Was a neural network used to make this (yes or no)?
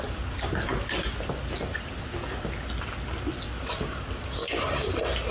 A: no